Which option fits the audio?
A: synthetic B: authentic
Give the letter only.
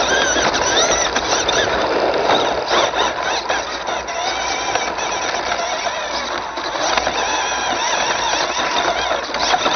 B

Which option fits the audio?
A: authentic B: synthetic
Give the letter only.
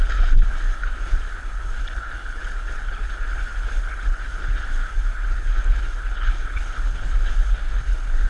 B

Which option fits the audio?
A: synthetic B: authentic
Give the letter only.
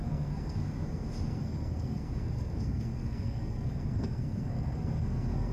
A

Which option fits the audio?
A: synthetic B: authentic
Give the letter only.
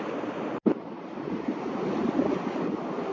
B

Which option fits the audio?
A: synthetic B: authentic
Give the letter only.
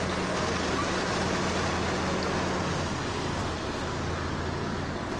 B